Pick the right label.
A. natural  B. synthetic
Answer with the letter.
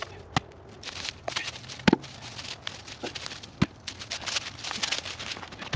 A